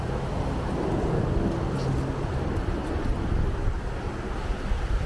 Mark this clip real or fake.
real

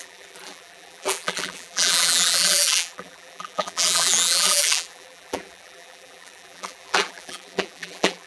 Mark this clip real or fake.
fake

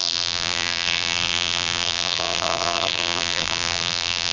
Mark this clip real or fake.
fake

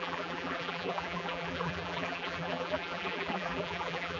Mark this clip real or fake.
fake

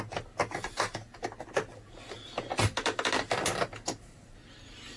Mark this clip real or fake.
real